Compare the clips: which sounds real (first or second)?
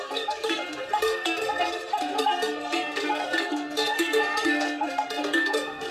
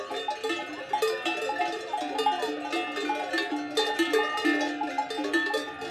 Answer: second